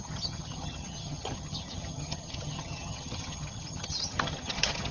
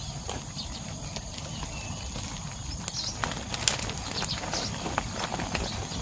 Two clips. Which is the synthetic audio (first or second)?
first